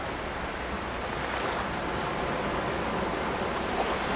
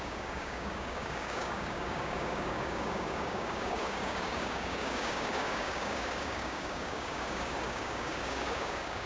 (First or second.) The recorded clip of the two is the first